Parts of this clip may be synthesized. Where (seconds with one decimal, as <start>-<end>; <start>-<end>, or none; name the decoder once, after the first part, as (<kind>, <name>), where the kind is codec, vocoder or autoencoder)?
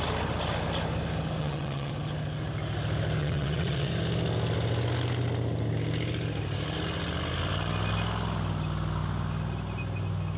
1.4-1.9 (vocoder, WaveNeXt); 3.2-3.9